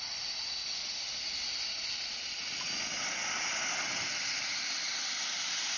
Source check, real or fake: real